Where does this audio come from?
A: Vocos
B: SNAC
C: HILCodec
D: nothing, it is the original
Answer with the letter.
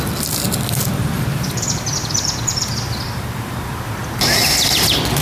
D